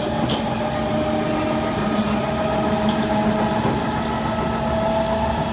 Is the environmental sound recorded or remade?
recorded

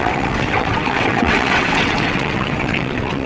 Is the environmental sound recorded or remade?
remade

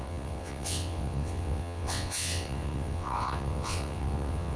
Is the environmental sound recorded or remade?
remade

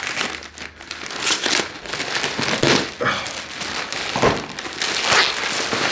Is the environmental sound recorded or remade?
recorded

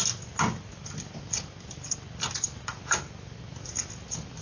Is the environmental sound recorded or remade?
recorded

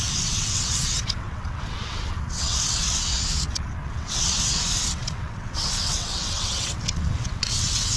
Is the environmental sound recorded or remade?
remade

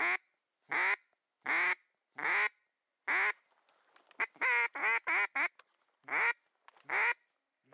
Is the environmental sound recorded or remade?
recorded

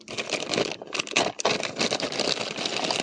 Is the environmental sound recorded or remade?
recorded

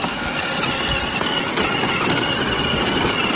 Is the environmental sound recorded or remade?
recorded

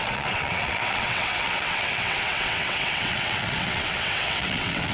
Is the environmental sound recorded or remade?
remade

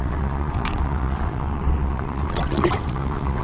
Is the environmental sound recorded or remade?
remade